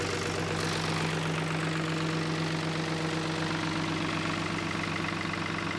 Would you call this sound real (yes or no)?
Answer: yes